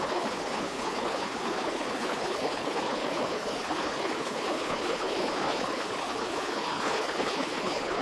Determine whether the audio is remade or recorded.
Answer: remade